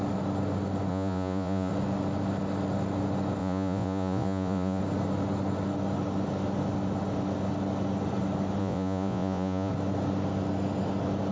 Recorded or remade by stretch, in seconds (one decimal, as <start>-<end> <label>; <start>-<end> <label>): 0.0-0.9 recorded; 0.9-1.7 remade; 1.7-3.4 recorded; 3.4-4.8 remade; 4.8-8.6 recorded; 8.6-9.7 remade; 9.7-11.3 recorded